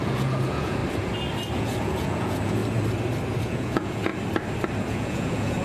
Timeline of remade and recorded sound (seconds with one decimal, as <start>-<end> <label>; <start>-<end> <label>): 0.0-0.8 remade; 0.8-1.5 recorded; 1.5-2.6 remade; 2.6-3.4 recorded; 3.4-4.1 remade; 4.1-4.9 recorded; 4.9-5.6 remade